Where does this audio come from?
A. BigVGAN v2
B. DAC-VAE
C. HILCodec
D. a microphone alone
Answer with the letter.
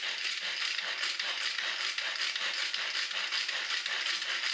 D